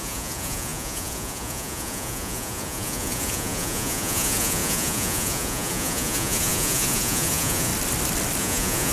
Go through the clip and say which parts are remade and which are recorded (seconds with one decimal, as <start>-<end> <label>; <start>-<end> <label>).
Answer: 0.0-7.7 remade; 7.7-8.4 recorded; 8.4-8.9 remade